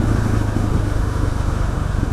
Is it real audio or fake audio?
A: fake